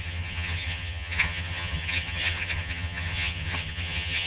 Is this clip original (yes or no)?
no